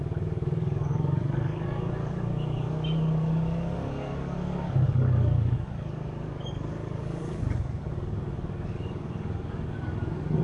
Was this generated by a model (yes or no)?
yes